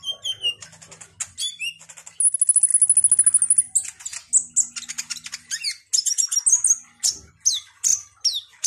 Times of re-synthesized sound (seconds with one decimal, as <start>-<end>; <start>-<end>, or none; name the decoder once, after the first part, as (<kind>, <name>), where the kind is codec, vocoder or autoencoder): none